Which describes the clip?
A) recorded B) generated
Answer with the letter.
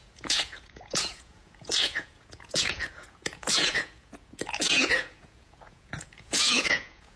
B